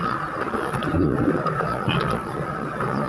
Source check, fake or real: fake